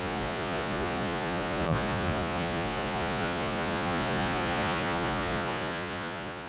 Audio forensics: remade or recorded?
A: remade